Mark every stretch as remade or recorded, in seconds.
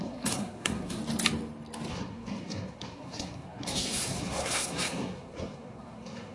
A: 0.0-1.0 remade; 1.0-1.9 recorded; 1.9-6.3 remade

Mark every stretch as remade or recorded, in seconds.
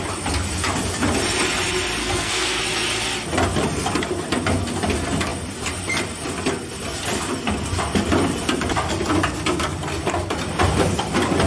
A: 0.0-2.0 recorded; 2.0-2.6 remade; 2.6-11.5 recorded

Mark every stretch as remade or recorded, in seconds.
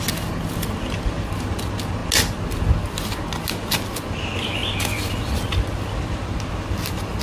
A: 0.0-7.2 recorded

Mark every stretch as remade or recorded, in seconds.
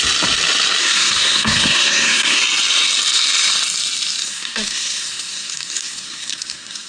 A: 0.0-0.8 recorded; 0.8-2.4 remade; 2.4-4.2 recorded; 4.2-6.9 remade